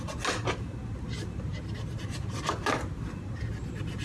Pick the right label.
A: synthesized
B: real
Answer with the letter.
B